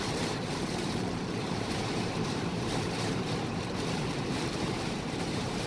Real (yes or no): no